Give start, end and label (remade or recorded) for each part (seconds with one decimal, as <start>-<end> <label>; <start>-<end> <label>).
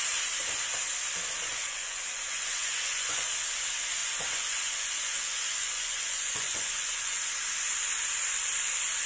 0.0-1.5 recorded; 1.5-3.3 remade; 3.3-4.0 recorded; 4.0-7.2 remade; 7.2-9.1 recorded